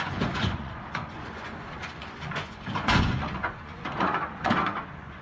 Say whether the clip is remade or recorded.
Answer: remade